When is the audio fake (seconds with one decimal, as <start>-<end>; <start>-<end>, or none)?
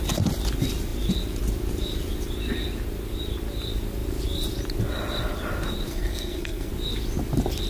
5.9-6.7